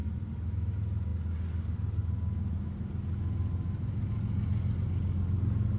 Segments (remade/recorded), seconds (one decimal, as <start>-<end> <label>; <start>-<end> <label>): 0.0-5.8 recorded